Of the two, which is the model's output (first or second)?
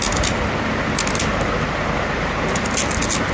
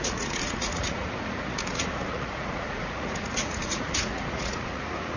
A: second